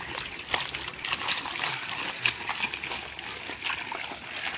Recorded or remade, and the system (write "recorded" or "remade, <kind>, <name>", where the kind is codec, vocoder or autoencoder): recorded